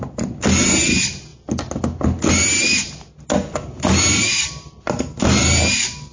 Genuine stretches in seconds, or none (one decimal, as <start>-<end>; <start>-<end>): 0.0-6.1